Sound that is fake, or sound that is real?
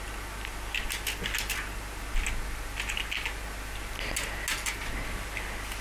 real